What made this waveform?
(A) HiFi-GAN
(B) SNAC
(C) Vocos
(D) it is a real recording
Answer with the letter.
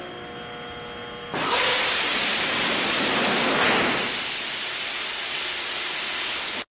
D